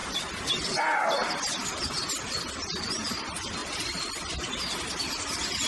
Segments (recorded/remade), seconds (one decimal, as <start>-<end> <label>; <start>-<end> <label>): 0.0-3.6 recorded; 3.6-4.9 remade; 4.9-5.7 recorded